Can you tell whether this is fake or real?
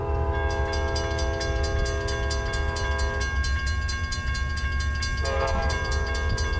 real